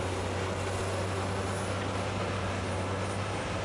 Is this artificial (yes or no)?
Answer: no